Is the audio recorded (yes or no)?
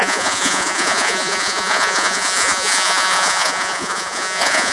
no